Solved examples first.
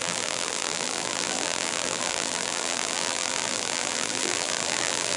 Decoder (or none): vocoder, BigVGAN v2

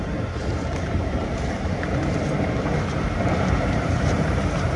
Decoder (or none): vocoder, BigVGAN v2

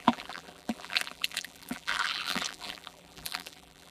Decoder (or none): vocoder, BigVGAN v2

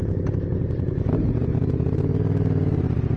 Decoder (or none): none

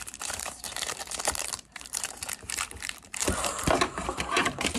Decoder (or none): vocoder, BigVGAN v2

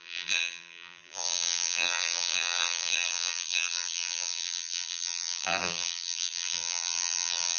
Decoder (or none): vocoder, BigVGAN v2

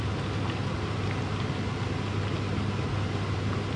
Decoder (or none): none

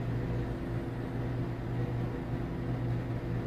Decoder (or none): none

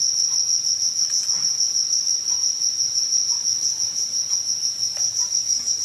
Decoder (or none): none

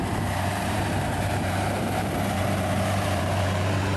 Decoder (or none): vocoder, BigVGAN v2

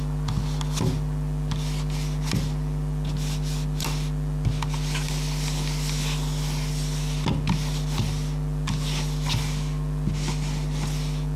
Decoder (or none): none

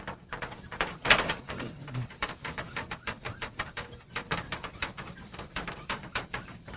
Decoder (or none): vocoder, BigVGAN v2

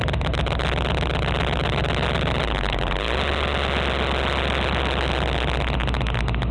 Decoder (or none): none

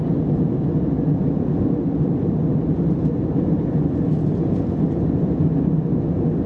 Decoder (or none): none